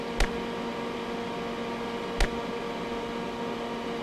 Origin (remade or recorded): recorded